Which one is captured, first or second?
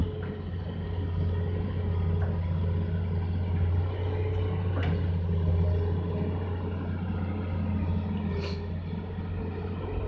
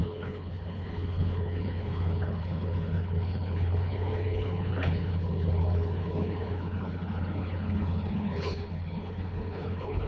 first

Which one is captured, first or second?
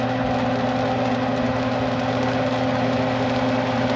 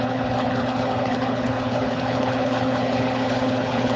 first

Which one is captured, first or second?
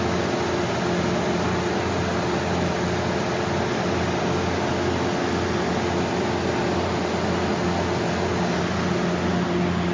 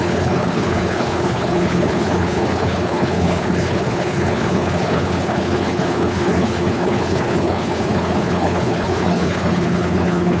first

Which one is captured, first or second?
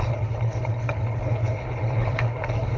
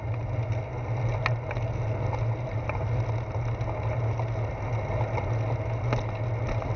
second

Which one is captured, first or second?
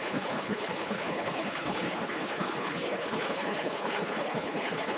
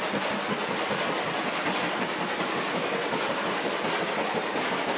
second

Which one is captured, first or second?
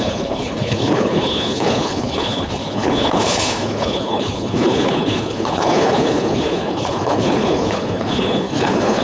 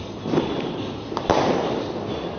second